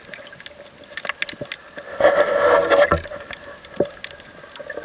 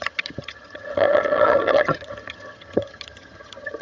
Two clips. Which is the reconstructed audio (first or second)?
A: second